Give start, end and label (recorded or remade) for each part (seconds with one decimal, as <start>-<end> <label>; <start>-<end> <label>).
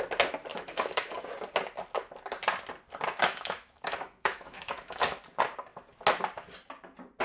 0.0-0.5 recorded; 0.5-1.1 remade; 1.1-3.2 recorded; 3.2-5.2 remade; 5.2-7.2 recorded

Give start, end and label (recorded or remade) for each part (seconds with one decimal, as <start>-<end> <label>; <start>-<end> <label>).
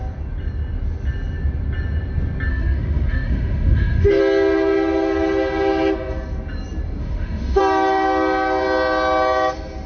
0.0-2.5 recorded; 2.5-4.2 remade; 4.2-7.0 recorded; 7.0-7.6 remade; 7.6-9.9 recorded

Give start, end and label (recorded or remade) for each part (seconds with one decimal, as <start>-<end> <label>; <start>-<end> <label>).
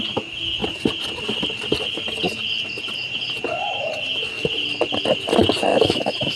0.0-5.7 recorded; 5.7-6.4 remade